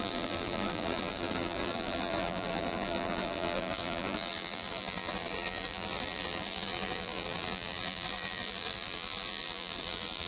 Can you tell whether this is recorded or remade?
remade